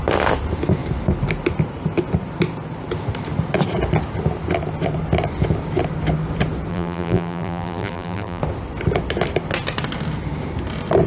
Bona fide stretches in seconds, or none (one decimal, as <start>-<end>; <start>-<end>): 0.0-6.7; 8.4-11.1